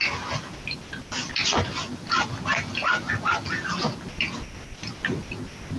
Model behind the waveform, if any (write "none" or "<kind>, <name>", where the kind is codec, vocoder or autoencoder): none